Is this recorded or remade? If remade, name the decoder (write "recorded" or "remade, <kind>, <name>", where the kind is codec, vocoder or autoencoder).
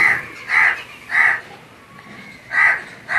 recorded